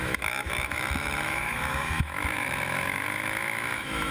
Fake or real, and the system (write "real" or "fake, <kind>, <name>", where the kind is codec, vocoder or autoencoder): fake, autoencoder, DAC-VAE